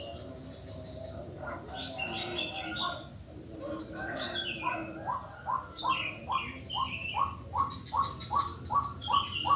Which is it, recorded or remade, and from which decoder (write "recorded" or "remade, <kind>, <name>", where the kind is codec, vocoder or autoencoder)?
recorded